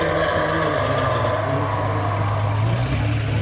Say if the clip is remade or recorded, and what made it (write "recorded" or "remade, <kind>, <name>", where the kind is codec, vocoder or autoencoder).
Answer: recorded